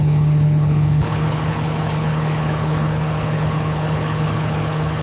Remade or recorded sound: remade